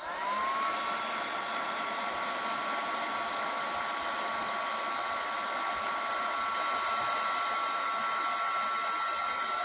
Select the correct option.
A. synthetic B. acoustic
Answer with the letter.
B